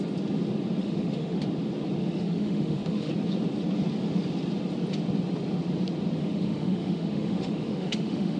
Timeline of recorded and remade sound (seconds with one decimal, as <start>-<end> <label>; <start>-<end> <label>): 0.0-0.8 recorded; 0.8-1.4 remade; 1.4-2.0 recorded; 2.0-3.1 remade; 3.1-6.2 recorded; 6.2-8.4 remade